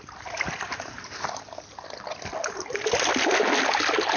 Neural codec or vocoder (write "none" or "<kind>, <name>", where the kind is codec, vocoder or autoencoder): none